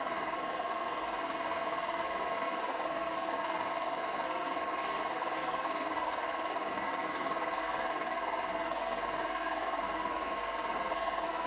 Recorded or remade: remade